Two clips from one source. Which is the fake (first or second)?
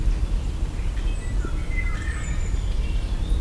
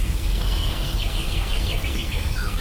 second